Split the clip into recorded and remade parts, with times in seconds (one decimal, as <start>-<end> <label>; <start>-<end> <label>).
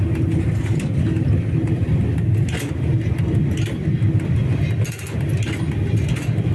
0.0-6.5 recorded